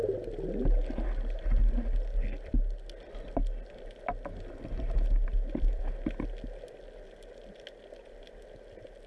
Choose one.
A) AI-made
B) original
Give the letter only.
B